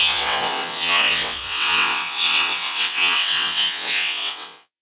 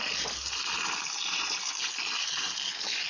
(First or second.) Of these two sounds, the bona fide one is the second